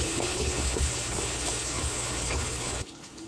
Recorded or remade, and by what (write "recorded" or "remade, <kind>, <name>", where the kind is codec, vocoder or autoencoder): remade, codec, HILCodec